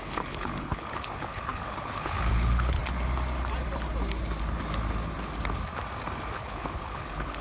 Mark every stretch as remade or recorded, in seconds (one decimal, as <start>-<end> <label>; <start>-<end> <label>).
0.0-2.8 remade; 2.8-6.4 recorded; 6.4-7.4 remade